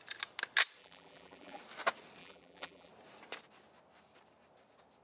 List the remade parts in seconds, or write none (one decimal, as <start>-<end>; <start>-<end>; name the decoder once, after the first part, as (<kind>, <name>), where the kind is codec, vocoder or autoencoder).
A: 0.8-1.6 (vocoder, BigVGAN v2); 2.2-2.9